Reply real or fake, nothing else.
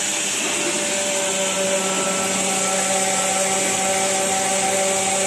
real